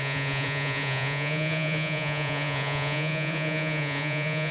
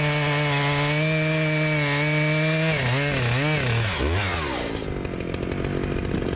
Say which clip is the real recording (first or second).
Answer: second